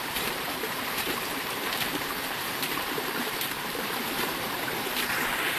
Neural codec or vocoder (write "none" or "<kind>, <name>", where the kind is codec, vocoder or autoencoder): vocoder, BigVGAN v2